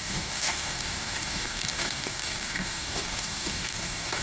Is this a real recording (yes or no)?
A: no